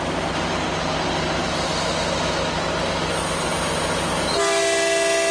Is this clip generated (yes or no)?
no